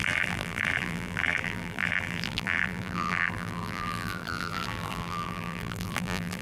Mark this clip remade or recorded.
remade